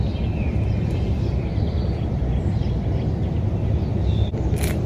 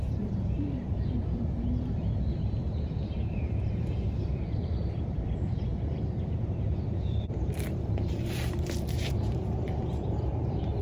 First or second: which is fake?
second